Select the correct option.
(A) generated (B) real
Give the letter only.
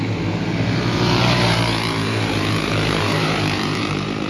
A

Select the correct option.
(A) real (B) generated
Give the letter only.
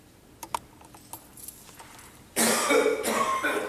A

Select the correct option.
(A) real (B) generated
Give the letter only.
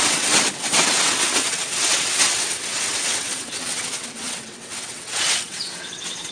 B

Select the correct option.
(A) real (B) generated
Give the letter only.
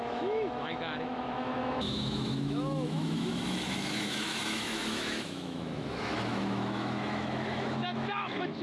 B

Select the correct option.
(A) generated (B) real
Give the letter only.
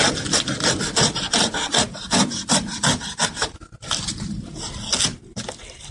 B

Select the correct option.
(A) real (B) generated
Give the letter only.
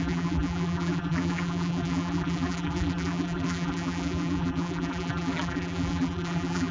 B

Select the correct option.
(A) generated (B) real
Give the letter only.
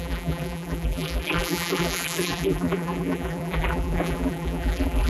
A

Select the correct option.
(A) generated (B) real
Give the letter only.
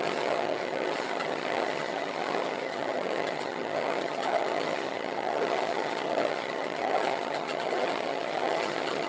A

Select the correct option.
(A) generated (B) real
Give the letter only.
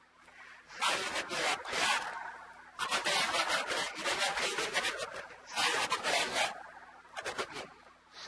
B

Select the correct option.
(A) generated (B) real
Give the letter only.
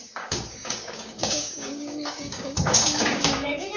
A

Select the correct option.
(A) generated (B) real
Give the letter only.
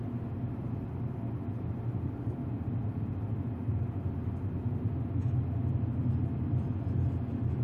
B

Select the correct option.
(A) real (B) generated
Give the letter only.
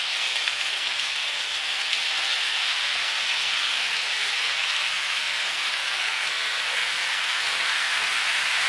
B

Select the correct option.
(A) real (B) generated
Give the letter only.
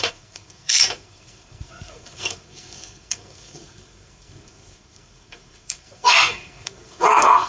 B